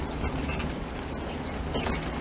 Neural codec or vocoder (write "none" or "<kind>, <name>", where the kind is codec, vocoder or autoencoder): none